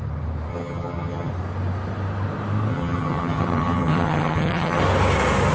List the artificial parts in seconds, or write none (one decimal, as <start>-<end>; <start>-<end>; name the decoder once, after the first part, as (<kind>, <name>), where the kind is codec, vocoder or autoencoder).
0.5-1.3 (vocoder, HiFi-GAN); 2.7-4.8